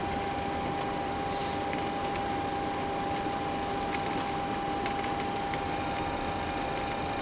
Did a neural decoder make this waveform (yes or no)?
no